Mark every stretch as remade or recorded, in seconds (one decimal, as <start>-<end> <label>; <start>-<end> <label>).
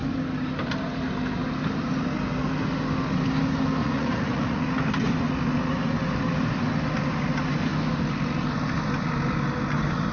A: 0.0-3.8 recorded; 3.8-4.6 remade; 4.6-10.1 recorded